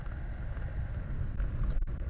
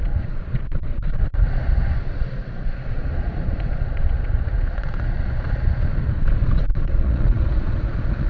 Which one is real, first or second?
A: first